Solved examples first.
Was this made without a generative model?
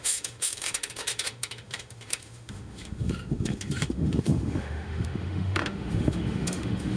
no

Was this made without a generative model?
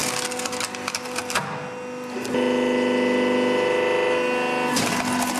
yes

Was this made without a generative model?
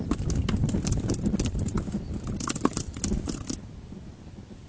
yes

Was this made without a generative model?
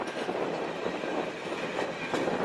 yes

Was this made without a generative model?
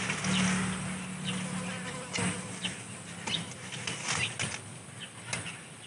yes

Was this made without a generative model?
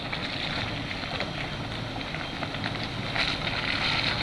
yes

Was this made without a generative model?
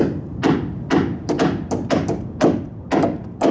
yes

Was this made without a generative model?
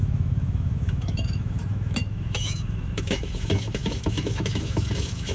no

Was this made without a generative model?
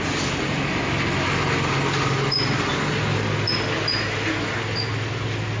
yes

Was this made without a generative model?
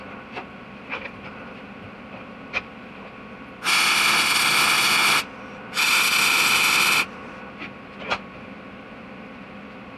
yes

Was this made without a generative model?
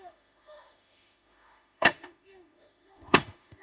no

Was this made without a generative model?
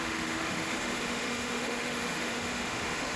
no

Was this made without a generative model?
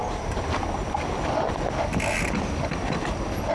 yes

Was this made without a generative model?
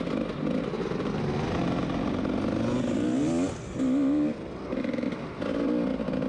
yes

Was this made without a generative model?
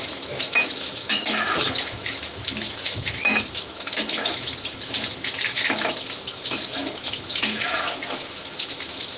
no